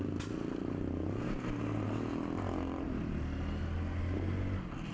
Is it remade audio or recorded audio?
recorded